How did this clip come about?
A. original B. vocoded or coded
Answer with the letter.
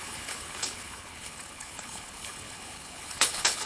B